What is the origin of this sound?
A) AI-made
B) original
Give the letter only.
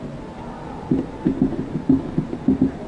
B